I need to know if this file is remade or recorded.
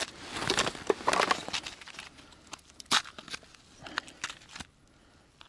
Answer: recorded